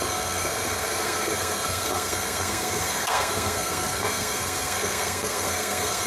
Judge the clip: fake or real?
fake